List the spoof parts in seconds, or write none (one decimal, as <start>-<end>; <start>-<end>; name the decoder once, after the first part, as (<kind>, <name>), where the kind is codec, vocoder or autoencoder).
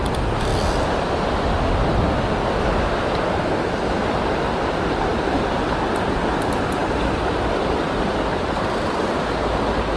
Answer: none